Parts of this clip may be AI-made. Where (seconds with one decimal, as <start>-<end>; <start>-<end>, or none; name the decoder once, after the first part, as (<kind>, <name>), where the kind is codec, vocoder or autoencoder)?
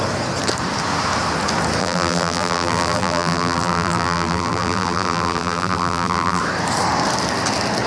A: 1.8-6.4 (vocoder, BigVGAN v2)